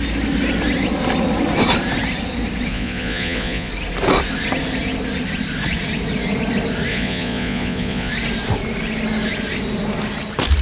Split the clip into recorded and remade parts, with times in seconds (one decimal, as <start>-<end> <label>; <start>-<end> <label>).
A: 0.0-2.7 recorded; 2.7-3.7 remade; 3.7-6.9 recorded; 6.9-8.1 remade; 8.1-10.6 recorded